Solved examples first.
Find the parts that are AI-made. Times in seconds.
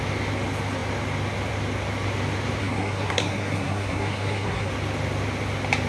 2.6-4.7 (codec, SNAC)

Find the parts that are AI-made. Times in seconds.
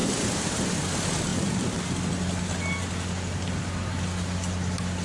0.0-0.7 (vocoder, BigVGAN v2)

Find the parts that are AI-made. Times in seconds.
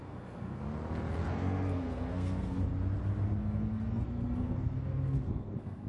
0.0-0.6 (codec, SNAC); 1.2-2.6; 3.4-5.9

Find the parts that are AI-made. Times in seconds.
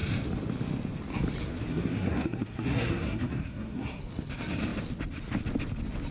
1.7-4.0 (codec, SNAC)